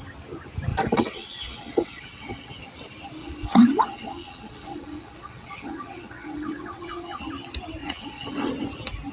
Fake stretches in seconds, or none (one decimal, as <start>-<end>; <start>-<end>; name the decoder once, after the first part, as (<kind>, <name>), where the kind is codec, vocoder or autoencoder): 0.7-2.5 (vocoder, WaveNeXt); 3.2-7.2; 7.8-8.5